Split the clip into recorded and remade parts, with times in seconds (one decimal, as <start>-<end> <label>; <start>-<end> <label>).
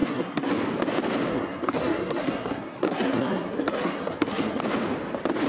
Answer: 0.0-0.5 remade; 0.5-1.3 recorded; 1.3-4.6 remade; 4.6-5.5 recorded